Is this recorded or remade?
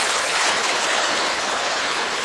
remade